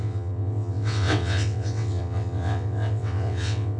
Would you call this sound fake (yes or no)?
yes